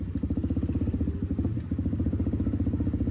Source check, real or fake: real